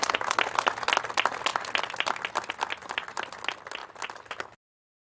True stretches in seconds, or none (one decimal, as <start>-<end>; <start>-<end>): 0.0-5.0